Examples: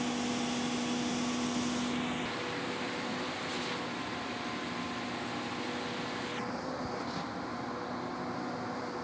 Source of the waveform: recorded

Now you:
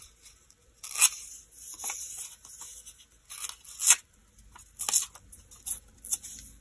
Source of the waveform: recorded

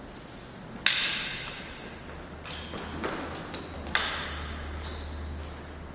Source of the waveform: recorded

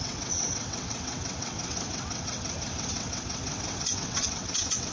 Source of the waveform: remade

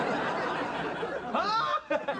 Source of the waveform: recorded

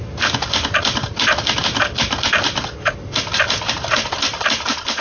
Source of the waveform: recorded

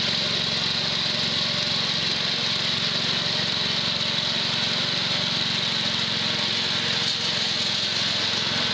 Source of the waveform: recorded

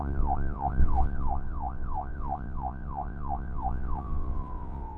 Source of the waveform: remade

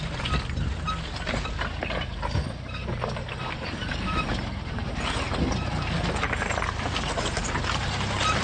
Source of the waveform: recorded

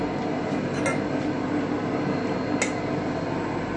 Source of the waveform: recorded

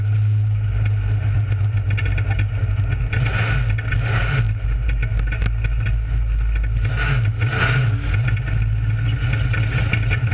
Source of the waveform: recorded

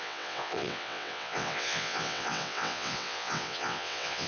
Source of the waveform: remade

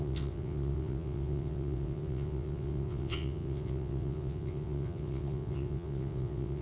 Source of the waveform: remade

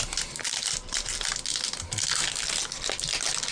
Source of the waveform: recorded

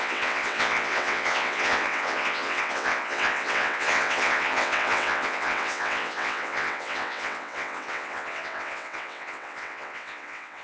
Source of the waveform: remade